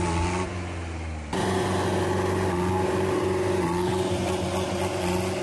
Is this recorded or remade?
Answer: recorded